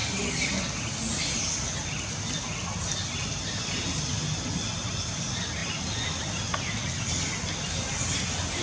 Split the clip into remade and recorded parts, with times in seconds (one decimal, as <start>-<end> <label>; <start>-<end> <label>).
0.0-8.6 recorded